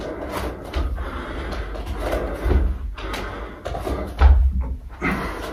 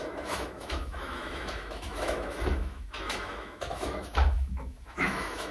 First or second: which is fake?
second